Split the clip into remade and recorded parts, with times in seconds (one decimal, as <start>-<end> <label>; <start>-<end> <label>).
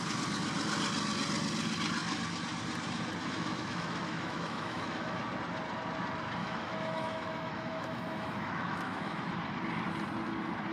0.0-3.2 recorded; 3.2-5.2 remade; 5.2-6.4 recorded; 6.4-9.3 remade; 9.3-10.7 recorded